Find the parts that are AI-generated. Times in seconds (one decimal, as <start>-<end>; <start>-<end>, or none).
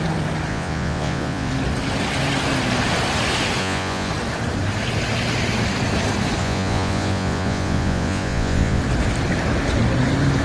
0.5-1.5; 3.6-4.1; 6.4-8.8